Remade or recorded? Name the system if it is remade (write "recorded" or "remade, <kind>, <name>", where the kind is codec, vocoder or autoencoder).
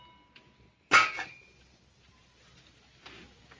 recorded